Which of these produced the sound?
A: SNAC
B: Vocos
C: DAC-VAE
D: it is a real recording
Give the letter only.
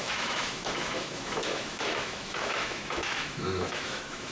C